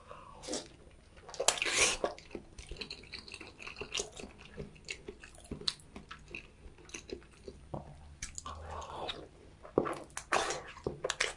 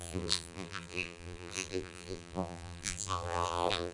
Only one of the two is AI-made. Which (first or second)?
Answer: second